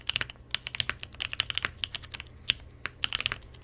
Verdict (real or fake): real